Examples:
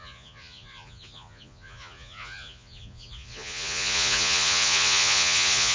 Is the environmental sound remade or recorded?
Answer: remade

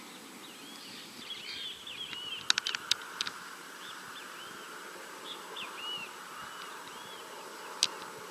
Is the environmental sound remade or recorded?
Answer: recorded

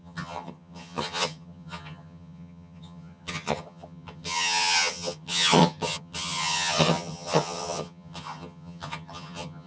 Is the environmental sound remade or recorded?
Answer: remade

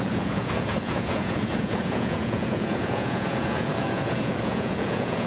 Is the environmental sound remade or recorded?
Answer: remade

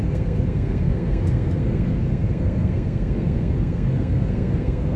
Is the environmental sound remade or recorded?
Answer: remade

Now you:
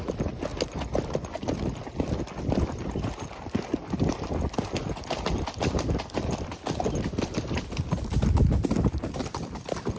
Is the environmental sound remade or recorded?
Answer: recorded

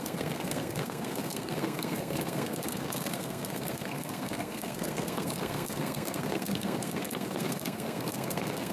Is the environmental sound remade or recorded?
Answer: remade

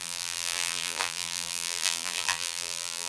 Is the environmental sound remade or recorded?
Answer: remade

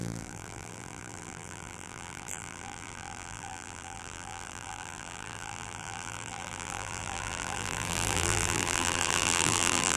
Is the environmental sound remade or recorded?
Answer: remade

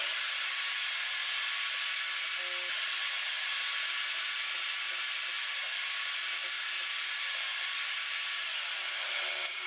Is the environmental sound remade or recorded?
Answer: recorded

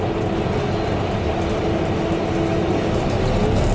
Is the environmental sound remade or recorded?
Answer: recorded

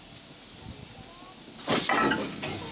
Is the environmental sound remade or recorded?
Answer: recorded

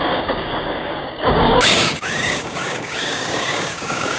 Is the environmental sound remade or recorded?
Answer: remade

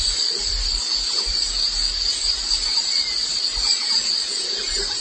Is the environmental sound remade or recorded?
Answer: remade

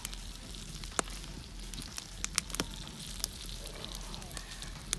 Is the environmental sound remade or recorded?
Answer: recorded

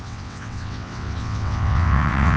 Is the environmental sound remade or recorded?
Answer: remade